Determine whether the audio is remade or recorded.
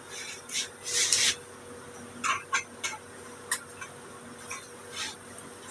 recorded